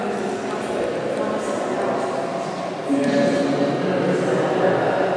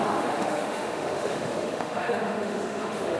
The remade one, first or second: second